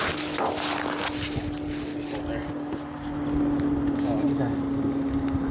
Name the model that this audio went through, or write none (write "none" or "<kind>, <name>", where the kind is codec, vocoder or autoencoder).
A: none